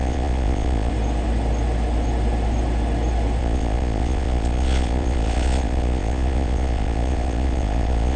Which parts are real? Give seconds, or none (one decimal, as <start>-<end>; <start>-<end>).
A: 0.9-3.4